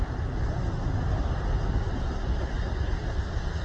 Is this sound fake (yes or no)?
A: no